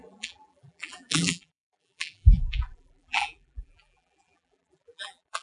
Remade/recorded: remade